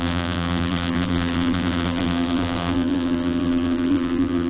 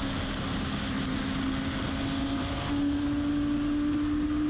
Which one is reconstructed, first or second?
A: first